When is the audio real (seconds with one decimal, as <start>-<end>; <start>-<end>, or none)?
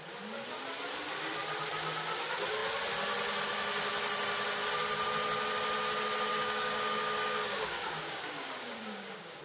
0.0-6.3